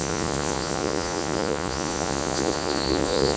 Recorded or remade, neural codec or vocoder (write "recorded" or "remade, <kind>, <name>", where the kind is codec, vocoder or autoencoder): remade, vocoder, Vocos